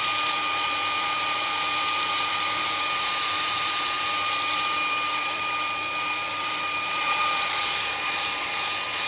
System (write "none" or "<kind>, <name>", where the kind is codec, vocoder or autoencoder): vocoder, BigVGAN v2